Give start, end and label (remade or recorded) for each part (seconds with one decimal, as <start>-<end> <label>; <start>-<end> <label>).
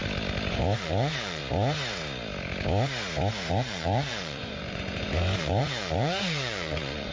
0.0-0.5 recorded; 0.5-1.4 remade; 1.4-3.5 recorded; 3.5-7.1 remade